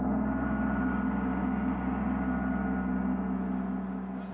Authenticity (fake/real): real